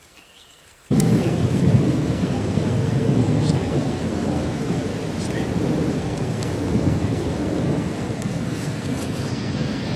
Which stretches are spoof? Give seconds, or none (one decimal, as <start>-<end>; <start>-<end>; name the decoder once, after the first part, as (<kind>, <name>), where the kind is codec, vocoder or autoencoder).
0.0-4.9 (codec, SNAC); 5.9-10.0